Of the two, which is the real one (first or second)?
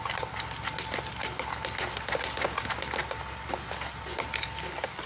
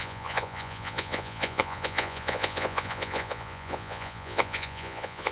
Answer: first